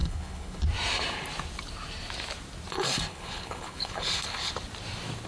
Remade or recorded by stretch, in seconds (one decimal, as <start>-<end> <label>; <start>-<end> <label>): 0.0-0.6 remade; 0.6-3.1 recorded; 3.1-4.5 remade; 4.5-5.3 recorded

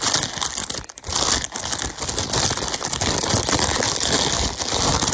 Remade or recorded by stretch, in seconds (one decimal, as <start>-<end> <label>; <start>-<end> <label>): 0.0-5.1 recorded

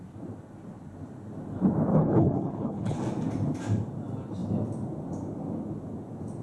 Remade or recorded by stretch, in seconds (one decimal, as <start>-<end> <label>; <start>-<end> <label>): 0.0-1.9 recorded; 1.9-3.0 remade; 3.0-6.4 recorded

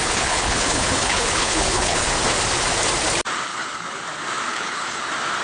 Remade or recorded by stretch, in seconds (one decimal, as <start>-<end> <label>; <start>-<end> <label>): 0.0-2.1 remade; 2.1-3.5 recorded; 3.5-4.0 remade; 4.0-4.5 recorded; 4.5-5.0 remade; 5.0-5.4 recorded

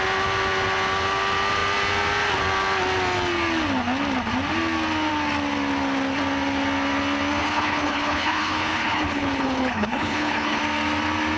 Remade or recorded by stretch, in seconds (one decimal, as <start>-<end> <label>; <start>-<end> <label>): 0.0-7.4 recorded; 7.4-10.6 remade; 10.6-11.4 recorded

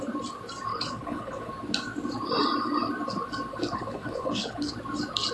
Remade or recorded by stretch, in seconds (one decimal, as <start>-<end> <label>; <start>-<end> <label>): 0.0-0.7 recorded; 0.7-1.5 remade; 1.5-3.5 recorded; 3.5-4.7 remade; 4.7-5.3 recorded

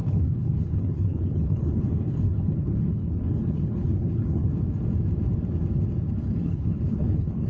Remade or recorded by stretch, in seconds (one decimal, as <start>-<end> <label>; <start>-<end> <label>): 0.0-4.5 remade; 4.5-6.2 recorded; 6.2-7.5 remade

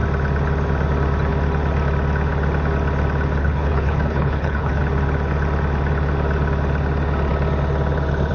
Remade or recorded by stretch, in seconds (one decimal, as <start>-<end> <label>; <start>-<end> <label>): 0.0-3.4 recorded; 3.4-4.8 remade; 4.8-8.3 recorded